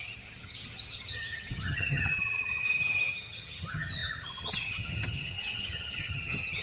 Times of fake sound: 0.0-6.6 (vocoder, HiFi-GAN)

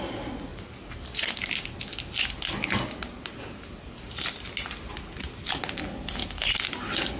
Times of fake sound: 0.5-1.4 (vocoder, BigVGAN v2); 3.0-3.7; 6.2-6.8

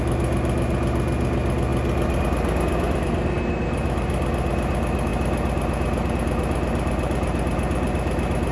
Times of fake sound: none

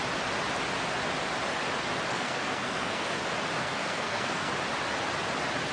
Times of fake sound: 2.1-3.2 (codec, SNAC); 3.6-4.5

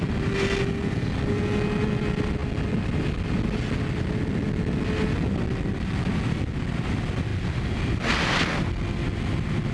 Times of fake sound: 0.8-1.3 (vocoder, BigVGAN v2)

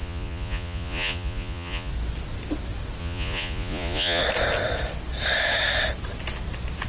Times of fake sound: 0.0-1.9 (vocoder, Vocos); 3.0-4.2

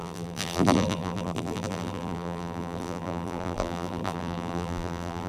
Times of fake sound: 0.0-5.3 (vocoder, BigVGAN v2)

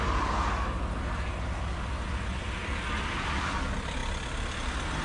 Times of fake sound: none